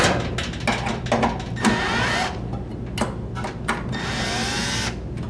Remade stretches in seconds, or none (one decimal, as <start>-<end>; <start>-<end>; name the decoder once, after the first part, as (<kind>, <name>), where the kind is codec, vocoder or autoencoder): none